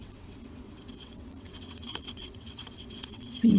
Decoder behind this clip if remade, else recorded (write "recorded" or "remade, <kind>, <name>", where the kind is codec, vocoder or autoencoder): remade, vocoder, WaveNeXt